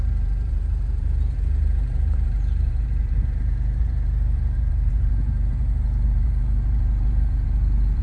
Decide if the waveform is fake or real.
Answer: fake